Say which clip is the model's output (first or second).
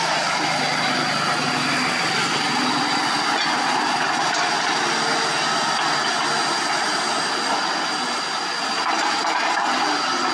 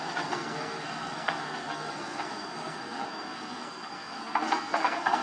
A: second